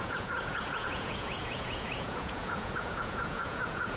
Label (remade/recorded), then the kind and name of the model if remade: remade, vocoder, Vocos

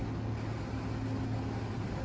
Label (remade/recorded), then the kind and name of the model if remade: recorded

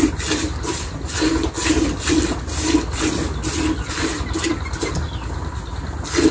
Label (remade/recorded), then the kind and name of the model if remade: recorded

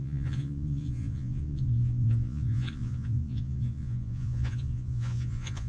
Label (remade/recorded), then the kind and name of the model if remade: remade, vocoder, Vocos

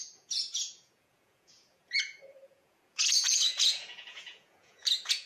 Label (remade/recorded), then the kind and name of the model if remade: remade, vocoder, Vocos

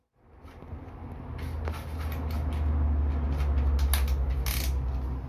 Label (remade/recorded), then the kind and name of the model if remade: recorded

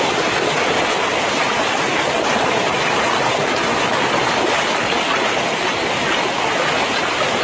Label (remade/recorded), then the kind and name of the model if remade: recorded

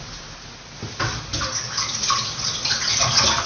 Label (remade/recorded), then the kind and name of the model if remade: recorded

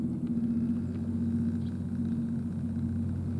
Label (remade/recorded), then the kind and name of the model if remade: recorded